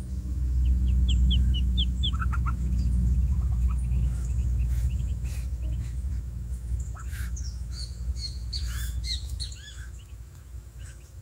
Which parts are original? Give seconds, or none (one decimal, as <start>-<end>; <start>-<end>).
none